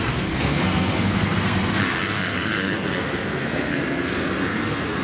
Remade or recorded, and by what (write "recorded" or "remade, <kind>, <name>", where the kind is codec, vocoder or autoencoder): remade, codec, SNAC